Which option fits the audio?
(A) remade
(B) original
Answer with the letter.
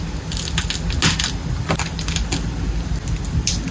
B